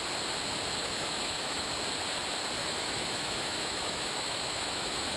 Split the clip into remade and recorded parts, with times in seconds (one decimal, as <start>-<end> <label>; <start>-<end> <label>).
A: 0.0-0.8 recorded; 0.8-1.7 remade; 1.7-2.6 recorded; 2.6-5.2 remade